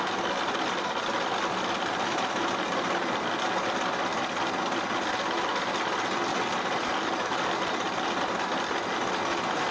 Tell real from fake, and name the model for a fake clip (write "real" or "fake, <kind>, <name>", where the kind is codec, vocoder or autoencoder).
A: real